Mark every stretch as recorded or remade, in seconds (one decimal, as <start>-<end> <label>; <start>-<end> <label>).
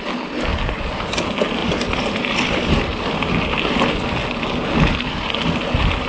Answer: 0.0-1.6 recorded; 1.6-3.2 remade; 3.2-6.1 recorded